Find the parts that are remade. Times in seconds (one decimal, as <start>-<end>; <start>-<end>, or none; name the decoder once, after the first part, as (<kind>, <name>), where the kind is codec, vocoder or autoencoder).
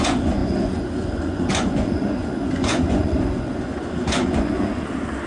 0.0-5.3 (vocoder, Vocos)